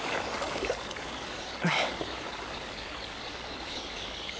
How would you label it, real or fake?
fake